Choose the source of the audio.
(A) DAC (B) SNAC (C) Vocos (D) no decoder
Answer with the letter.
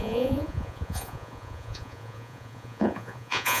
C